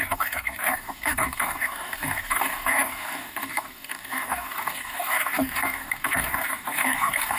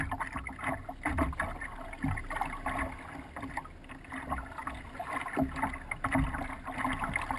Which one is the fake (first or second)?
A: first